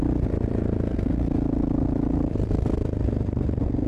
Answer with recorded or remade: recorded